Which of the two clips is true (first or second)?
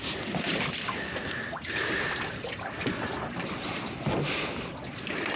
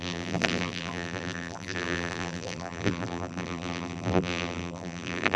first